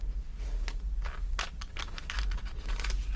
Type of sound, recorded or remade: recorded